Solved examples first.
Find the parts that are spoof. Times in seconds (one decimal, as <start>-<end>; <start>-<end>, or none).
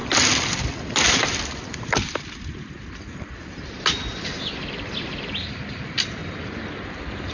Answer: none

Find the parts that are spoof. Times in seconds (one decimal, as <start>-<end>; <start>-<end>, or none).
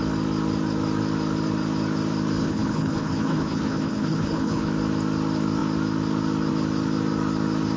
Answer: 2.4-4.7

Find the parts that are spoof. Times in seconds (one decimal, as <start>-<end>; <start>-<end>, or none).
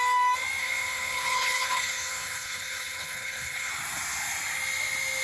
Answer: 0.6-3.7